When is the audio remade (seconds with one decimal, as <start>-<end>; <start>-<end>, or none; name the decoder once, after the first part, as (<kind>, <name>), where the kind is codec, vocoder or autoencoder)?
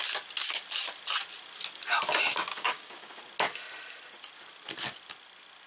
2.5-3.2 (codec, DAC)